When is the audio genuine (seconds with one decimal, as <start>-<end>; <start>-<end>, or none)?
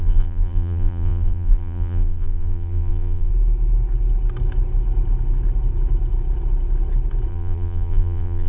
3.3-7.3